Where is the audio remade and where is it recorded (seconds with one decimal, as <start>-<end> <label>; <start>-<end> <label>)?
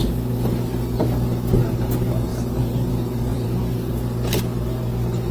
0.0-3.3 recorded; 3.3-4.4 remade; 4.4-5.3 recorded